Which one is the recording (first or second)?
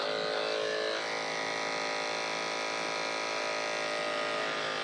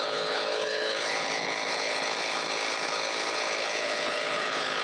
first